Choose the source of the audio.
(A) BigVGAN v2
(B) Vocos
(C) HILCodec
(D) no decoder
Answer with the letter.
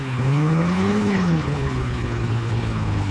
C